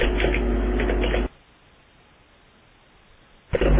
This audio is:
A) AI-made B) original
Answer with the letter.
B